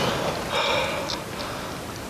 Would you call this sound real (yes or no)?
yes